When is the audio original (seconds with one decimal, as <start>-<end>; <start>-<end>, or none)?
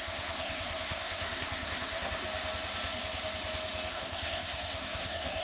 2.2-3.9